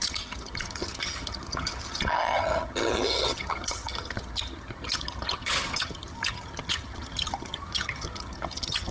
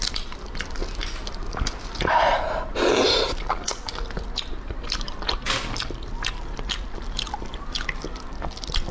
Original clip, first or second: second